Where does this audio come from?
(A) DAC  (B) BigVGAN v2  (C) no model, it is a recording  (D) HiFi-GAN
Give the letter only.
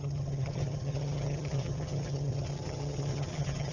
D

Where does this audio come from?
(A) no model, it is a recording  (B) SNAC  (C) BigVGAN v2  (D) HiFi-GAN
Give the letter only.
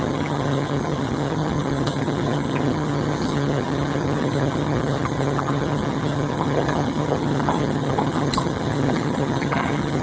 D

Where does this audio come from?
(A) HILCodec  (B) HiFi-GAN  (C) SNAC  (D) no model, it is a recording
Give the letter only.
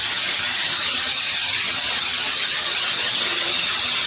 B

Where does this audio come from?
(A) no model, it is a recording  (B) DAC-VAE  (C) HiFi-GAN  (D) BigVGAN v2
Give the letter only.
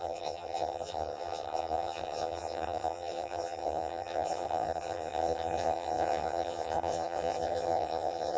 C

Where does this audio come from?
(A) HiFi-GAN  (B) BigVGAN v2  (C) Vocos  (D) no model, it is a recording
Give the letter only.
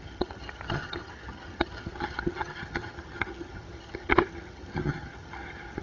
A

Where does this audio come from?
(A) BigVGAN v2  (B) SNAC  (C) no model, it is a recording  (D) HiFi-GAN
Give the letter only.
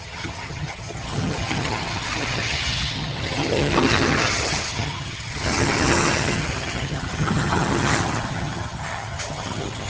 D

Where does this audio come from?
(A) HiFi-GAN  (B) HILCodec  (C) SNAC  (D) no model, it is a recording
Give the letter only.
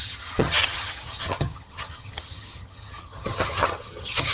A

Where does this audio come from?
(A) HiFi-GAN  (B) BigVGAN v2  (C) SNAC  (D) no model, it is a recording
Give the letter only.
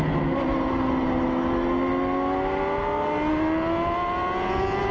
D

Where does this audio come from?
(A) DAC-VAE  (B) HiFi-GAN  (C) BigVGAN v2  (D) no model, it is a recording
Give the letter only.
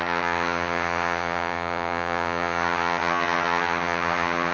B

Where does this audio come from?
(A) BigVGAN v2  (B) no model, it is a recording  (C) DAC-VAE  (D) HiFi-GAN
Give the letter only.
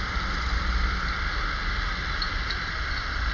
B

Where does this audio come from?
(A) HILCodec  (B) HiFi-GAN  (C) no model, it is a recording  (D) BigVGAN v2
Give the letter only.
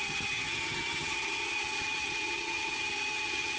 B